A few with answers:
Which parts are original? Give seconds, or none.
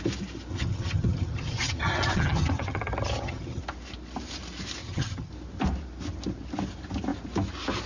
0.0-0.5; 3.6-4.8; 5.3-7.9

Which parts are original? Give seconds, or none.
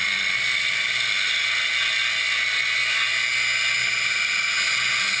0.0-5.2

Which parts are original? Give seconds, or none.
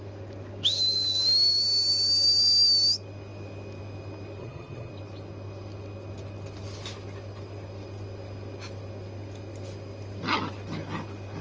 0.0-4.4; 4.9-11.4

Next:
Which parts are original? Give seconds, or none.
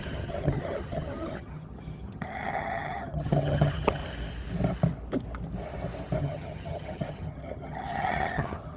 4.0-6.2